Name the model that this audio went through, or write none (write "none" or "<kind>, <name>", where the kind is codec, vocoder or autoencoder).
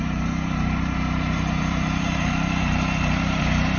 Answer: vocoder, BigVGAN v2